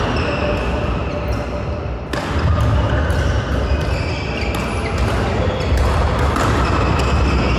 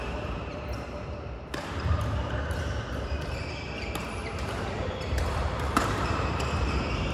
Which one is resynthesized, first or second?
second